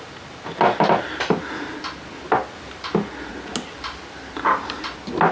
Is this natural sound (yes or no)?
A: yes